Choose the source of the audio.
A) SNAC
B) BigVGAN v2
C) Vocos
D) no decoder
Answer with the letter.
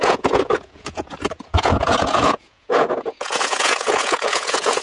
C